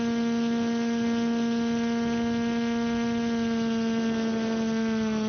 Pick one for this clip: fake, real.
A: real